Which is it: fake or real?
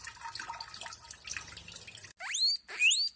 real